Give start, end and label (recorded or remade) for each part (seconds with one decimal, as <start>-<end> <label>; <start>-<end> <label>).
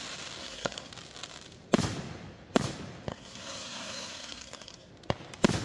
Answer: 0.0-0.4 recorded; 0.4-0.9 remade; 0.9-3.1 recorded; 3.1-4.9 remade; 4.9-5.6 recorded